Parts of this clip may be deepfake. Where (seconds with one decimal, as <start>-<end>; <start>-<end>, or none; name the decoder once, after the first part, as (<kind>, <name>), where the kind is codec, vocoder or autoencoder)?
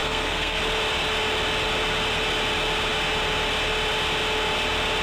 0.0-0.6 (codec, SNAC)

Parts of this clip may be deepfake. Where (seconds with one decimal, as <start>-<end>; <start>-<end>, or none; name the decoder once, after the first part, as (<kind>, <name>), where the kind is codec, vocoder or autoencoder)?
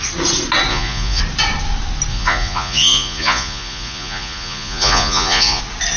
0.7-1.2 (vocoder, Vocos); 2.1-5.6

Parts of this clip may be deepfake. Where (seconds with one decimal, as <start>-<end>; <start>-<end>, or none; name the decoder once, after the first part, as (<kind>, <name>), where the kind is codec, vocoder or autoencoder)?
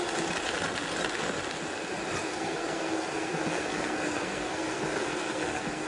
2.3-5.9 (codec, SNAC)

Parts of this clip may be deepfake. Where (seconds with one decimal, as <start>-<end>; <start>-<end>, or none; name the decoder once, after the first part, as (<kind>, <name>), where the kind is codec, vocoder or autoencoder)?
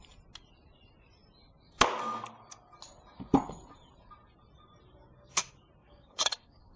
5.8-6.8 (codec, DAC)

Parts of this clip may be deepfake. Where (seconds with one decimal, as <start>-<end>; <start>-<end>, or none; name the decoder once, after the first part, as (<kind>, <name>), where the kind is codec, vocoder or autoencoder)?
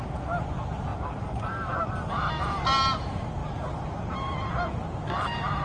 0.9-2.1 (vocoder, BigVGAN v2); 3.4-4.5